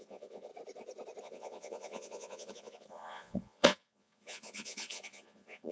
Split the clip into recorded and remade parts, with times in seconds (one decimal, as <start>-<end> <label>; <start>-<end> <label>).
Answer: 0.0-0.5 remade; 0.5-1.2 recorded; 1.2-5.7 remade